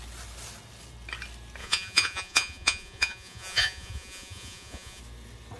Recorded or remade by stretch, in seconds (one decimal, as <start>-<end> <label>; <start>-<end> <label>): 0.0-1.6 recorded; 1.6-5.0 remade; 5.0-5.6 recorded